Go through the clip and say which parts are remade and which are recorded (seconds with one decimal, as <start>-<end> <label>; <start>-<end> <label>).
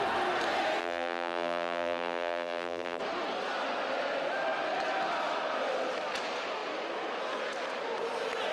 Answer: 0.0-0.8 recorded; 0.8-3.0 remade; 3.0-8.5 recorded